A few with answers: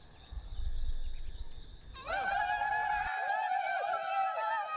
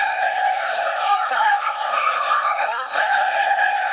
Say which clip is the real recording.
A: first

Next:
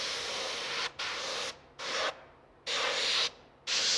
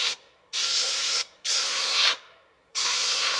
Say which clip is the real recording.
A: first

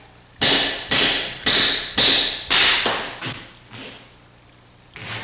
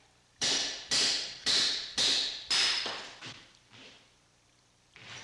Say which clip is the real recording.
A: first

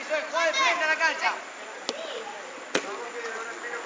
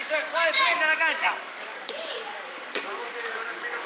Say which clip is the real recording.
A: first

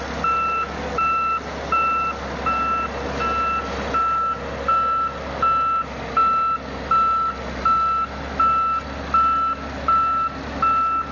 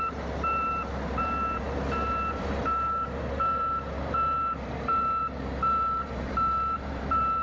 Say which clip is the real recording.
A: first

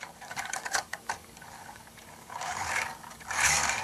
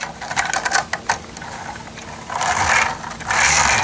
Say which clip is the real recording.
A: second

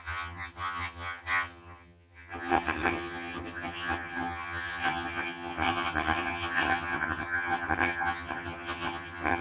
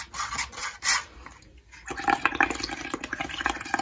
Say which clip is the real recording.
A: second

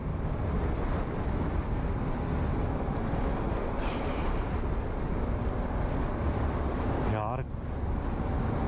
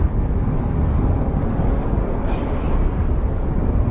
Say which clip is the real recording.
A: first